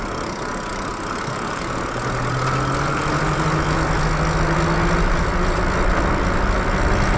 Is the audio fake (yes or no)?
no